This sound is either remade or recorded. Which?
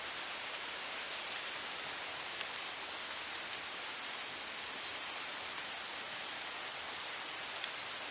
recorded